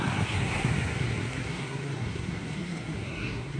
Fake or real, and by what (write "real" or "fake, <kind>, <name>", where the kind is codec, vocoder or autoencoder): fake, codec, SNAC